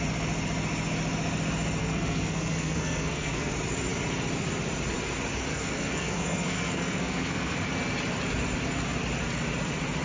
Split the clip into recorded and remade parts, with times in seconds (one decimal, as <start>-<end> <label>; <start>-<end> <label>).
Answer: 0.0-1.8 recorded; 1.8-3.5 remade; 3.5-5.5 recorded; 5.5-7.6 remade; 7.6-10.0 recorded